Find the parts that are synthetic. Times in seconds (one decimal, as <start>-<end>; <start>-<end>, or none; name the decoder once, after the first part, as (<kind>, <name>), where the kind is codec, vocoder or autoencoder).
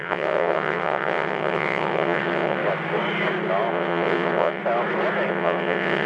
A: 0.0-2.6 (vocoder, WaveNeXt); 3.7-4.6; 5.3-6.1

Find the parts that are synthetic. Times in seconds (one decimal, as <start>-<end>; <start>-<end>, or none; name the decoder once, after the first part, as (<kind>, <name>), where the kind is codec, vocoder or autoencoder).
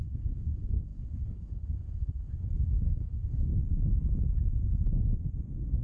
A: 0.0-3.5 (codec, HILCodec)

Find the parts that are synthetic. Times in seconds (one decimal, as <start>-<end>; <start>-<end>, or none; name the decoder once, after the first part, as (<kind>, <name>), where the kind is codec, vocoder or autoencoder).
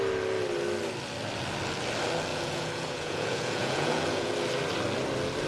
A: 2.3-4.3 (vocoder, Vocos)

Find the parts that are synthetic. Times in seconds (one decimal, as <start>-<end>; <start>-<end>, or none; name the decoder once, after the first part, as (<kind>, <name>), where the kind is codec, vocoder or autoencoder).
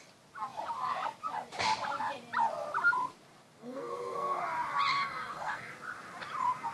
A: 3.6-4.4 (codec, SNAC); 4.9-5.7